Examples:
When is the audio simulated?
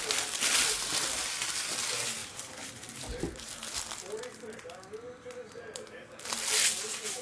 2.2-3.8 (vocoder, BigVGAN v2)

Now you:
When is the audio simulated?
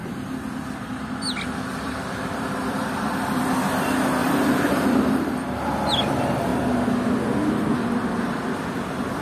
0.0-3.4 (vocoder, BigVGAN v2); 4.2-5.3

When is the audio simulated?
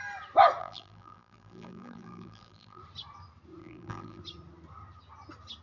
0.6-2.8 (vocoder, BigVGAN v2); 3.6-4.2